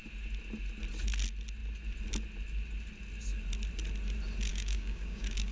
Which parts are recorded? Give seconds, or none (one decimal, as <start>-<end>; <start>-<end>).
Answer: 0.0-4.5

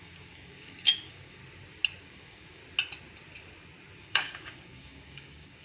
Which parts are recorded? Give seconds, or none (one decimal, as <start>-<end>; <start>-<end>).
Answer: 1.4-2.0; 2.6-4.0

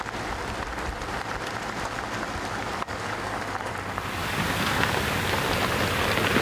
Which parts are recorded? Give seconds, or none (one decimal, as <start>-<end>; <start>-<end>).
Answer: 0.0-2.5; 3.7-4.2; 5.2-6.4

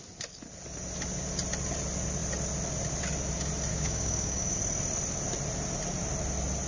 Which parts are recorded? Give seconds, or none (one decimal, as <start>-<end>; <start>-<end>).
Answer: 0.0-3.7; 4.6-6.7

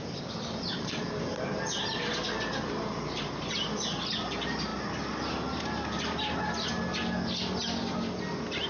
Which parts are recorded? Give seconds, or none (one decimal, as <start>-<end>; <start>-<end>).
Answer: 0.0-8.7